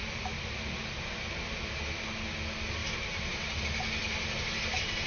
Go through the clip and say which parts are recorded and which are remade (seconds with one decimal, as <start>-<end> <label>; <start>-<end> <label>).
0.0-2.8 recorded; 2.8-3.6 remade; 3.6-5.1 recorded